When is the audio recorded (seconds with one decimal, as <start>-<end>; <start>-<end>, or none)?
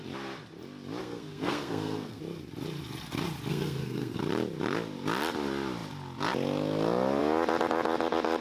0.0-1.0; 2.2-3.5; 4.2-8.4